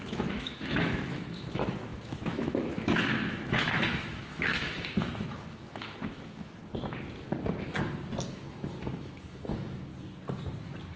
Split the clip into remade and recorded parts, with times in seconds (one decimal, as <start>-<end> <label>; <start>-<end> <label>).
0.0-6.6 remade; 6.6-8.3 recorded; 8.3-9.9 remade; 9.9-11.0 recorded